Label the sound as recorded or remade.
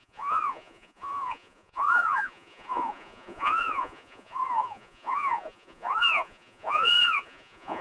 remade